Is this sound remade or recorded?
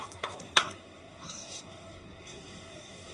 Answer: remade